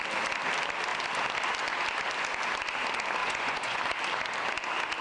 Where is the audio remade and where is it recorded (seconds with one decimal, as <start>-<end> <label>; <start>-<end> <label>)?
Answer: 0.0-3.2 recorded; 3.2-3.8 remade; 3.8-5.0 recorded